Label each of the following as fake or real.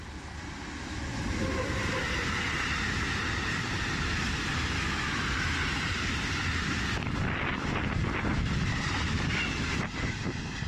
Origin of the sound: real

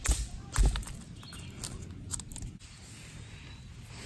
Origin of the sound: real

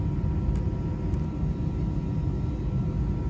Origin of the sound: real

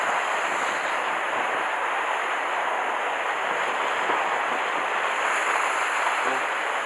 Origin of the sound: real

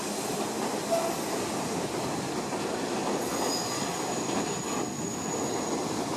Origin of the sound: real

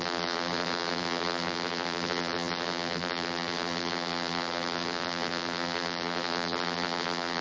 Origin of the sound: fake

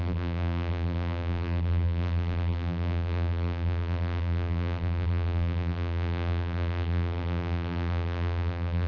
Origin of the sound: fake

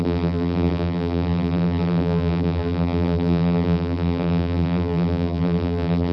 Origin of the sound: fake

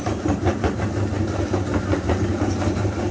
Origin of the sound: fake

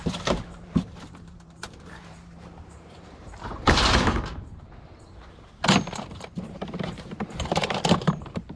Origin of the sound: fake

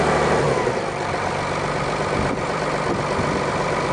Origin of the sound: fake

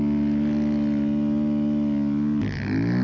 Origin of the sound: real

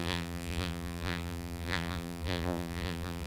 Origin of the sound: fake